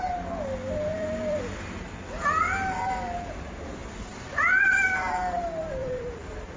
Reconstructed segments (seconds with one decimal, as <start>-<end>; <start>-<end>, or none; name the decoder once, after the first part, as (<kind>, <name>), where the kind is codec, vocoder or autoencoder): 0.9-1.4 (vocoder, BigVGAN v2); 3.8-4.8; 5.8-6.6